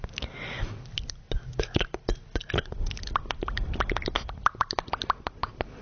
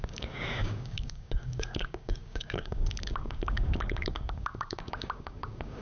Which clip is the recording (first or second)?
first